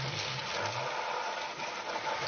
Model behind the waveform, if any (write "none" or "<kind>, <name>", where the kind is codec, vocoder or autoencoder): none